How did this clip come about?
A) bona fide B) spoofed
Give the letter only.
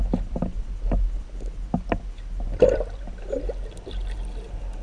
A